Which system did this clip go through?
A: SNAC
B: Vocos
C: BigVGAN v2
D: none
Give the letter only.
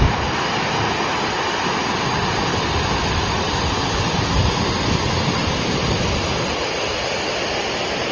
D